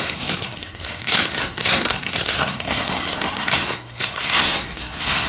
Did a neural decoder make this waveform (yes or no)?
yes